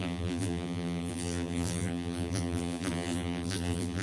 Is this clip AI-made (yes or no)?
yes